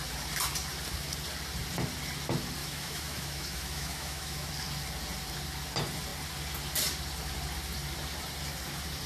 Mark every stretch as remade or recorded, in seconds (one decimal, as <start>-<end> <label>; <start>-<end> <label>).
0.0-2.6 recorded; 2.6-4.5 remade; 4.5-9.1 recorded